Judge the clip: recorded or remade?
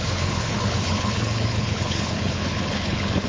remade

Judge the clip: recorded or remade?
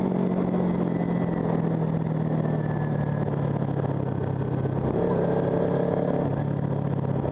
recorded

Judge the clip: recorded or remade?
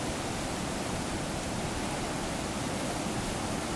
recorded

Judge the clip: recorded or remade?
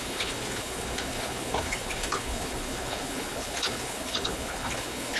remade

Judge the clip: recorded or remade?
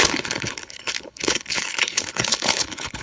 remade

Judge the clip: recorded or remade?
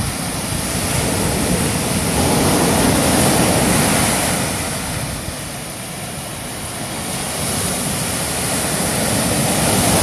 recorded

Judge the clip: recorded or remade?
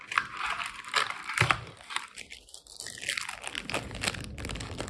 recorded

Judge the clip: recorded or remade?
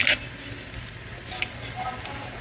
recorded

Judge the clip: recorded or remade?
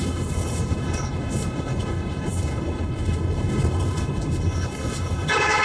remade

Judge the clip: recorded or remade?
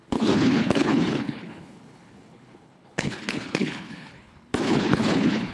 remade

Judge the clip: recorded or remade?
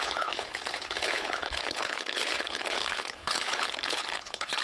remade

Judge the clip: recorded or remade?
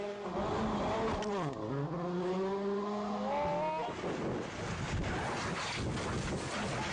recorded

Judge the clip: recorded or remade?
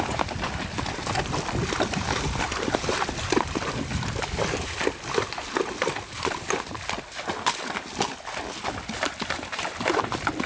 recorded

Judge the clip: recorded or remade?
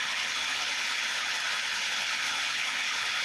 remade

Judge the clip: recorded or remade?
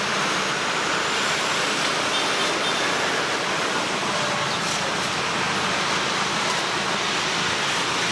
recorded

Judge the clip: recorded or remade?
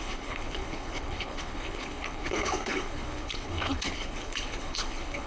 remade